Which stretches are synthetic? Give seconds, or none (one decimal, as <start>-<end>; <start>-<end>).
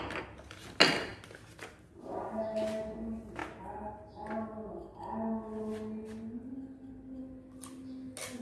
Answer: none